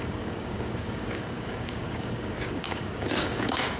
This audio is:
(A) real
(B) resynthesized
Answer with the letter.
B